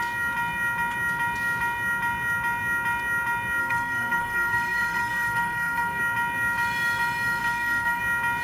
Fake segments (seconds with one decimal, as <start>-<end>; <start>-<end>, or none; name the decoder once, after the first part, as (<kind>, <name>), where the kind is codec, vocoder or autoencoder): 3.6-6.0 (codec, SNAC); 7.4-8.0